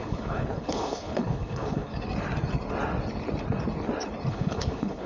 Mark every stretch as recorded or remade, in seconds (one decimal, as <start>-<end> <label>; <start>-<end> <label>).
0.0-1.9 remade; 1.9-4.3 recorded; 4.3-5.1 remade